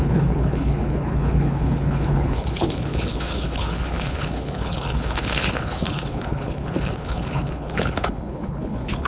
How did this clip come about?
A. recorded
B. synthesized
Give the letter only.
B